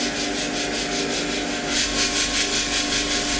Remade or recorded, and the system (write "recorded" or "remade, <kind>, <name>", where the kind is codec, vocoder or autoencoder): recorded